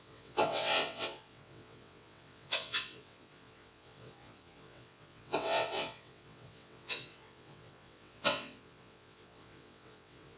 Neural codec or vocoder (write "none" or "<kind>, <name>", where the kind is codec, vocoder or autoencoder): vocoder, WaveNeXt